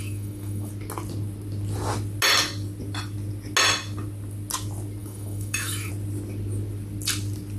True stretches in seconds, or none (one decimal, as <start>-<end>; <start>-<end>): 0.7-5.0; 5.9-7.6

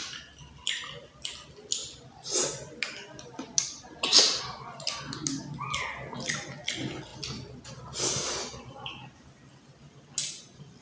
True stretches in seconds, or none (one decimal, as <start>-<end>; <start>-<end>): 0.0-10.8

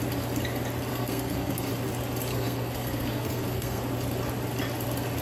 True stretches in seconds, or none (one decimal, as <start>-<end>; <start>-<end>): 0.0-0.9; 1.7-2.3; 3.8-5.2

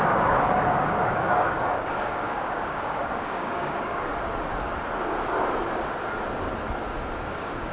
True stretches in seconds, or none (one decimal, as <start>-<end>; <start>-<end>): 4.1-7.3